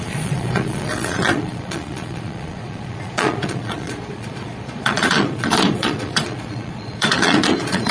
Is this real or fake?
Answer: fake